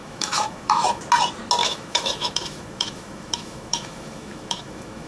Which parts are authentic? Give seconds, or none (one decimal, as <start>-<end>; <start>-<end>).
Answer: 1.0-1.6